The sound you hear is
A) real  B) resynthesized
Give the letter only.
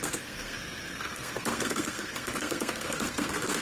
B